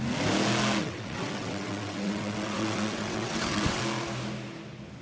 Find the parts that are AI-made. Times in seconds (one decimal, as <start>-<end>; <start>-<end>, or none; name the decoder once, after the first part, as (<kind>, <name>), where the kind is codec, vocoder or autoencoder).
0.8-3.8 (vocoder, WaveNeXt)